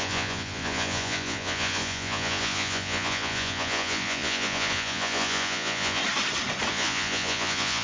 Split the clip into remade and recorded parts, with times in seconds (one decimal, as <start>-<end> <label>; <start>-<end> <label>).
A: 0.0-6.0 remade; 6.0-6.7 recorded; 6.7-7.8 remade

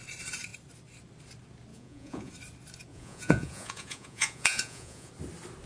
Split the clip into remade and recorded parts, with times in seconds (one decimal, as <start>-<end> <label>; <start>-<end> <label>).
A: 0.0-1.7 recorded; 1.7-2.3 remade; 2.3-2.9 recorded; 2.9-5.1 remade; 5.1-5.7 recorded

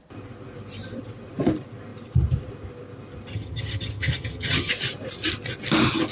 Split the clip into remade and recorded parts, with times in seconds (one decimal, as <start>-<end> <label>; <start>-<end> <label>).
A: 0.0-3.3 recorded; 3.3-4.7 remade; 4.7-6.1 recorded

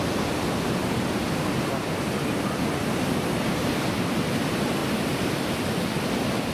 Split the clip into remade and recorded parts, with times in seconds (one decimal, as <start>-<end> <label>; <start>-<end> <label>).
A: 0.0-4.8 recorded; 4.8-5.8 remade; 5.8-6.5 recorded

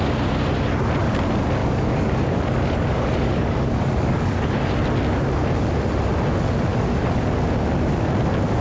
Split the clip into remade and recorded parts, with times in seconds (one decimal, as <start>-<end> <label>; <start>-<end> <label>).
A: 0.0-1.6 recorded; 1.6-4.7 remade; 4.7-6.7 recorded; 6.7-7.2 remade; 7.2-8.6 recorded